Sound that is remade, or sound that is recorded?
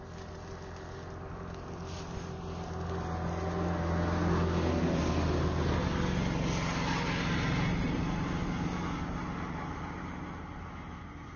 recorded